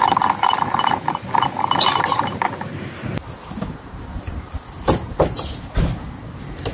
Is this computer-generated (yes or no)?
no